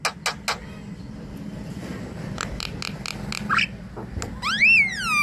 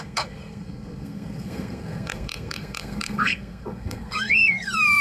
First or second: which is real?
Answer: first